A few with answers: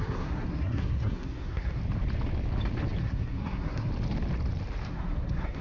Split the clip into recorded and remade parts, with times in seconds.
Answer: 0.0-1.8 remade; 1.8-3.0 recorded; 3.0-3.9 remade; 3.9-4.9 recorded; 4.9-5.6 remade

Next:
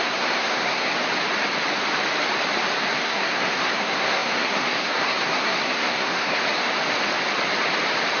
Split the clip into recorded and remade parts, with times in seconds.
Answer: 0.0-0.9 remade; 0.9-2.9 recorded; 2.9-6.4 remade; 6.4-8.2 recorded

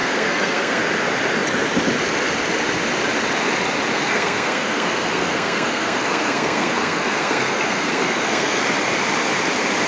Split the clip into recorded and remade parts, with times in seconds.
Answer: 0.0-0.8 remade; 0.8-3.9 recorded; 3.9-8.6 remade; 8.6-9.9 recorded

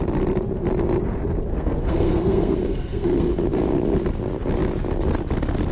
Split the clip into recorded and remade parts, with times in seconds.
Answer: 0.0-1.5 recorded; 1.5-3.3 remade; 3.3-5.7 recorded

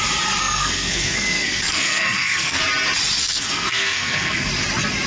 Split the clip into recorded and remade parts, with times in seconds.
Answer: 0.0-0.4 recorded; 0.4-2.6 remade; 2.6-3.2 recorded; 3.2-4.5 remade; 4.5-5.1 recorded